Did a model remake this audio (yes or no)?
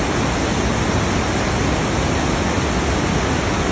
no